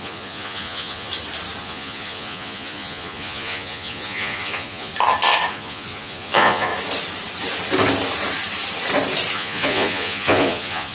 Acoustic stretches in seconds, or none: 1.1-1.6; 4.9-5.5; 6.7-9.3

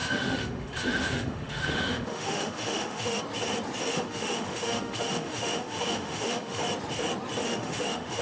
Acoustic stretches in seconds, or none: 3.2-3.9; 6.6-7.4

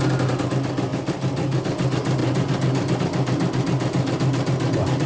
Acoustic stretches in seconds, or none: 0.0-5.1

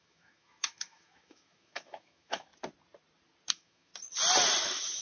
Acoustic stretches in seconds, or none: 2.5-3.5; 3.9-4.6